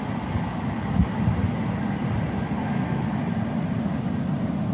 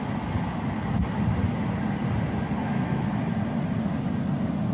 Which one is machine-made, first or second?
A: first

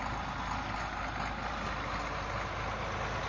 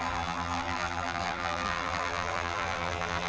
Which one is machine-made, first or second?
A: second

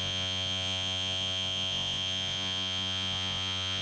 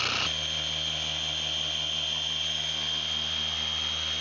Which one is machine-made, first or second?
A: first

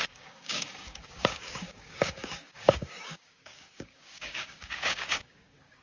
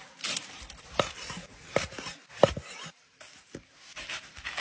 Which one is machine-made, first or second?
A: first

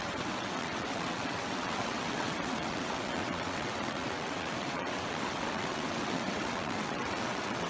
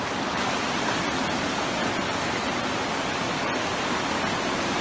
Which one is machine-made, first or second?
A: first